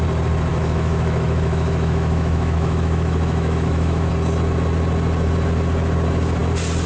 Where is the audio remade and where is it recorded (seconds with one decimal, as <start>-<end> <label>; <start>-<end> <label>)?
0.0-0.5 recorded; 0.5-4.1 remade; 4.1-6.9 recorded